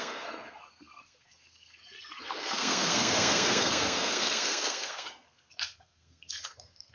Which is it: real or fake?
fake